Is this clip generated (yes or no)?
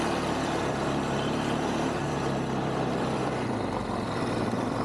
yes